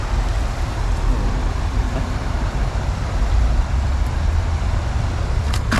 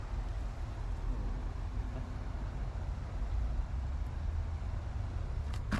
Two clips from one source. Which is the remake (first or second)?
first